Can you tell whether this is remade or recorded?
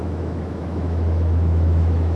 remade